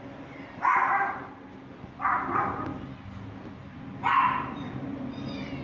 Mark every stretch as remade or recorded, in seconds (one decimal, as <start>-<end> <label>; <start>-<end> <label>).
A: 0.0-5.6 recorded